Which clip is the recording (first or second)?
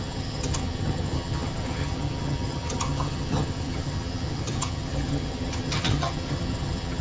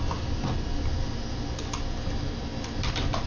second